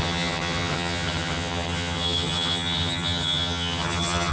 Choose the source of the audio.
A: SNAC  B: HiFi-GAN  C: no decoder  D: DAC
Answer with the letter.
B